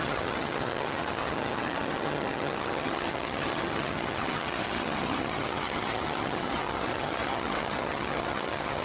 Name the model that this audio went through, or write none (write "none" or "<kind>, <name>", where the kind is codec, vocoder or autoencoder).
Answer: vocoder, HiFi-GAN